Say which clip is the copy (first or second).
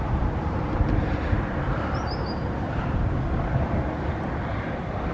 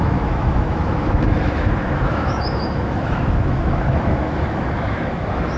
second